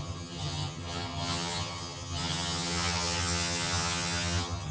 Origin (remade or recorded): remade